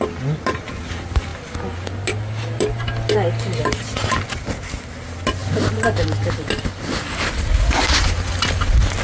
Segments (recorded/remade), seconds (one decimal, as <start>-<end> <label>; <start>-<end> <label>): 0.0-9.0 recorded